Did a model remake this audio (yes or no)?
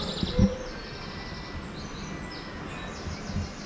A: no